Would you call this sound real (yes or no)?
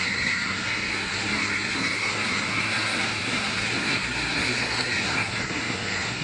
no